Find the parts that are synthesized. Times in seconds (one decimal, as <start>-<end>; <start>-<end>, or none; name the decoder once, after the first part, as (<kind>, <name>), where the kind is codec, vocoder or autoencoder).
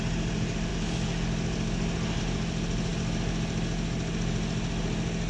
none